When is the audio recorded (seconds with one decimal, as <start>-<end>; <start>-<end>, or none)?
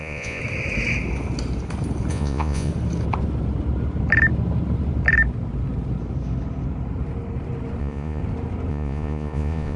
0.4-2.1; 2.7-7.8; 8.2-8.7